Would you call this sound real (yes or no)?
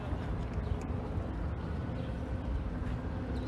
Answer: yes